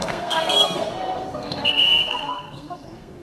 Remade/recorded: remade